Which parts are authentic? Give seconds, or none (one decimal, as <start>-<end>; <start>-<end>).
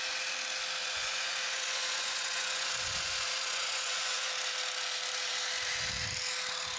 0.0-0.8; 4.3-6.8